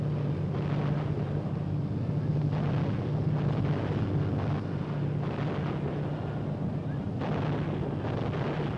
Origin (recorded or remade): recorded